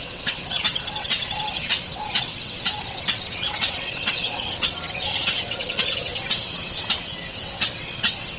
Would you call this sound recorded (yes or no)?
no